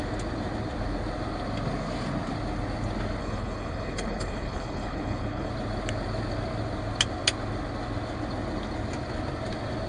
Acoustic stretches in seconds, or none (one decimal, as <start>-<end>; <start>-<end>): 0.0-3.2; 5.5-9.9